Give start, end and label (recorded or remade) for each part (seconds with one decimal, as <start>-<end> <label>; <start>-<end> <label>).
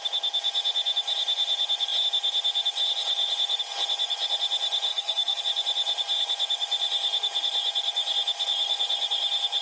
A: 0.0-4.9 recorded; 4.9-5.4 remade; 5.4-9.6 recorded